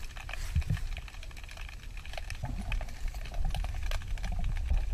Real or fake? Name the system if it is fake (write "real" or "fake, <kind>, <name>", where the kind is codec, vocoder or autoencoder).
real